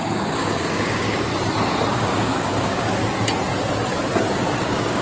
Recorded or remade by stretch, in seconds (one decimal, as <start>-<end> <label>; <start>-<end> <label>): 0.0-1.3 remade; 1.3-1.9 recorded; 1.9-3.0 remade; 3.0-4.6 recorded; 4.6-5.0 remade